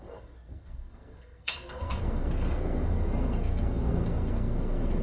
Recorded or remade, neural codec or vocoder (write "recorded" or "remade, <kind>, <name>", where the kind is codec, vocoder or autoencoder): remade, codec, SNAC